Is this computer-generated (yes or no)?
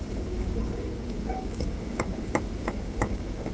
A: yes